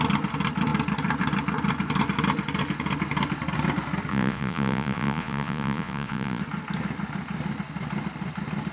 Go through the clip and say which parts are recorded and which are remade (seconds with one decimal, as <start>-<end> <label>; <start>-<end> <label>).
0.0-4.1 recorded; 4.1-6.4 remade; 6.4-8.7 recorded